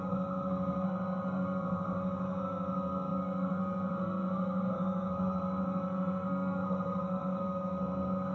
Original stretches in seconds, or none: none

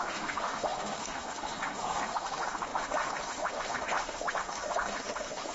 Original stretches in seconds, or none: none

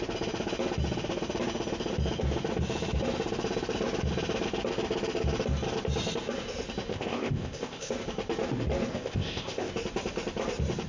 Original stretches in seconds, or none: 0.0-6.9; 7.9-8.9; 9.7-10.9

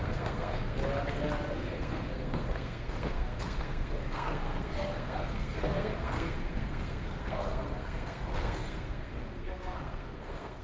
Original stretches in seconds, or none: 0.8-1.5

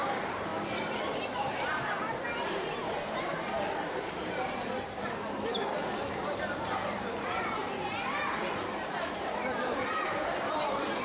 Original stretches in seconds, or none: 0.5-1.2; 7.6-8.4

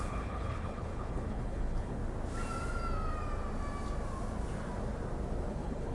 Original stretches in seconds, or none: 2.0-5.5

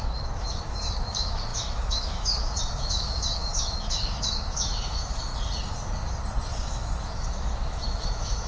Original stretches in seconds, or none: 5.3-6.6

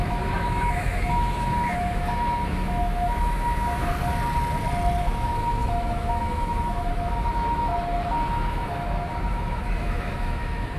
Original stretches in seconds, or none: 3.9-5.0; 7.7-8.2